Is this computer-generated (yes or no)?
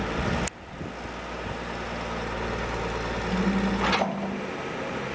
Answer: no